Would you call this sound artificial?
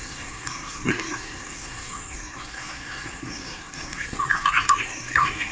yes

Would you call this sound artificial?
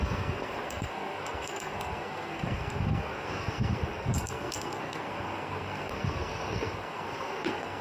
yes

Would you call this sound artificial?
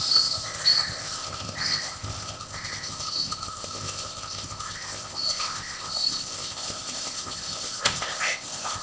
yes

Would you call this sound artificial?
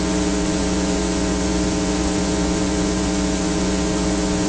yes